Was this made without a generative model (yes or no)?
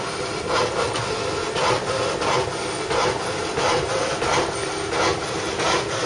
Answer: yes